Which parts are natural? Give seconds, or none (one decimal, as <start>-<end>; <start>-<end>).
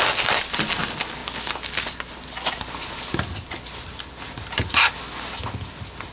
0.0-6.1